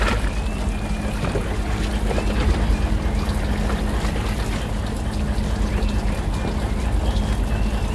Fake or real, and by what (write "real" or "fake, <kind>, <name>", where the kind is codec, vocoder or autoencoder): real